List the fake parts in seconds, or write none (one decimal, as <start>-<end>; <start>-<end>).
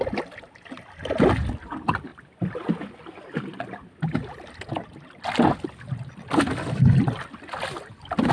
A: none